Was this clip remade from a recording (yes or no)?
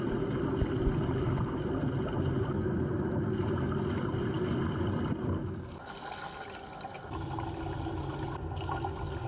no